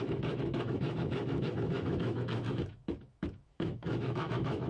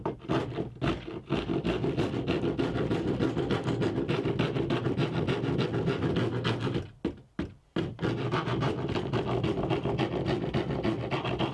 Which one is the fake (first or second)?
first